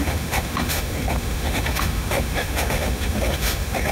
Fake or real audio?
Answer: fake